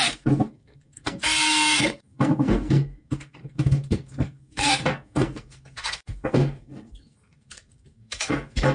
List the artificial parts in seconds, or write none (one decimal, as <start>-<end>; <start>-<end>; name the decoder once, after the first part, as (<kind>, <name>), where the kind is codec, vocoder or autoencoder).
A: 0.0-8.7 (codec, SNAC)